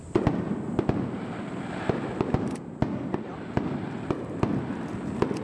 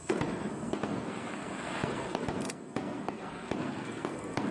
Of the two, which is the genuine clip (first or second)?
first